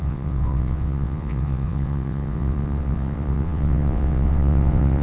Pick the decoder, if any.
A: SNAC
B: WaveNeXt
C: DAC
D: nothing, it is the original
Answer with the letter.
B